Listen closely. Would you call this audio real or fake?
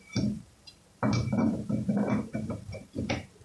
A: fake